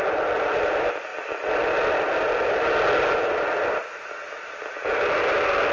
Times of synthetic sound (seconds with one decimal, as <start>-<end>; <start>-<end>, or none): none